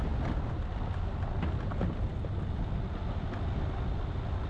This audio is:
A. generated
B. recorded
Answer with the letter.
B